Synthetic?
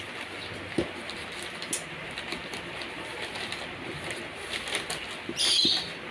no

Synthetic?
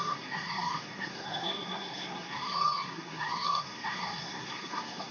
yes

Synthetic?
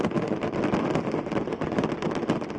no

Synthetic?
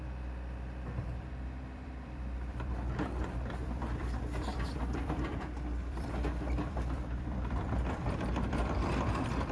yes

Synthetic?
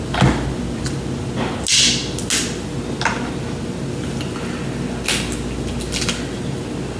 no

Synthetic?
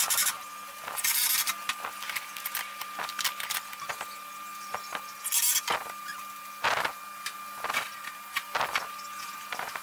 no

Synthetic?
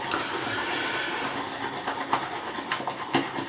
no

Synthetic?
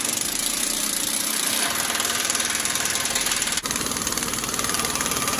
yes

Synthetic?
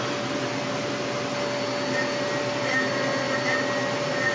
no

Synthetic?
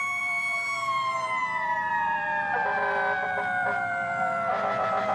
yes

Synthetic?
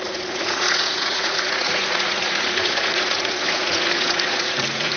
yes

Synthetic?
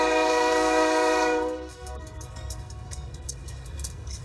yes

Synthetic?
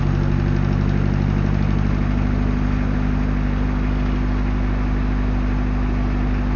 no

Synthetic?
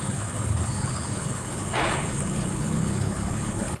yes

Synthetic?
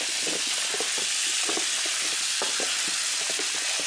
no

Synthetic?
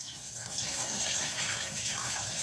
yes